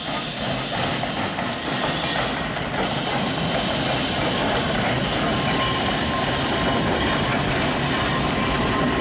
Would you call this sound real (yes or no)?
yes